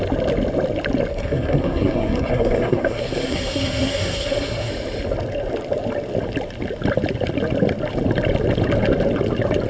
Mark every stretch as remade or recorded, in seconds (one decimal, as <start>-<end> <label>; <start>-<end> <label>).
0.0-1.1 recorded; 1.1-4.7 remade; 4.7-9.7 recorded